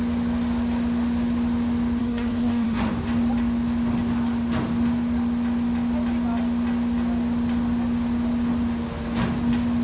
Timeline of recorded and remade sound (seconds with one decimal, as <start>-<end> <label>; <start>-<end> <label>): 0.0-2.0 recorded; 2.0-2.9 remade; 2.9-9.8 recorded